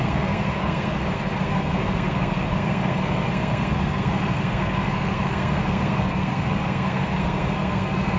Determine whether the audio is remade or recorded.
remade